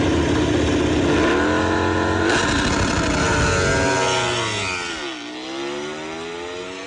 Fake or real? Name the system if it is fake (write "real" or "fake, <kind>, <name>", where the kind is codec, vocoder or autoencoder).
real